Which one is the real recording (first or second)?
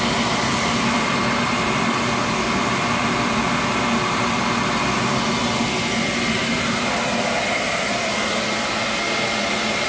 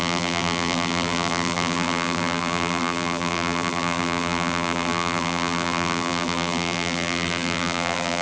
first